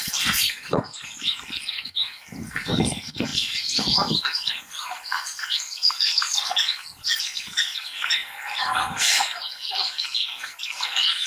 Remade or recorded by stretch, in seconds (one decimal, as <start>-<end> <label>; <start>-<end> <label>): 0.0-11.3 remade

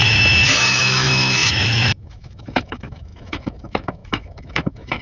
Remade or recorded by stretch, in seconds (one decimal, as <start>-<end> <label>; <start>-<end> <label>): 0.0-5.0 remade